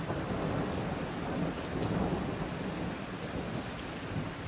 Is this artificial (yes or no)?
no